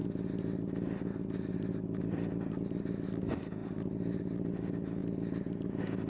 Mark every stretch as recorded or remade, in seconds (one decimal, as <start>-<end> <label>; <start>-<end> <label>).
0.0-6.1 recorded